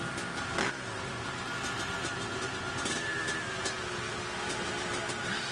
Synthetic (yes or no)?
no